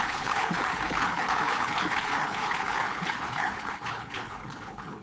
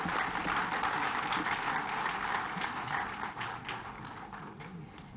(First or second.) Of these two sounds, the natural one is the second